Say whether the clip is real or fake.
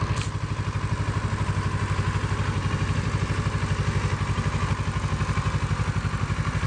real